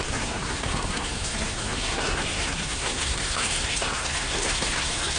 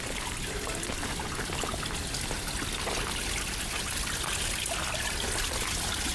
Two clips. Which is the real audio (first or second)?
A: second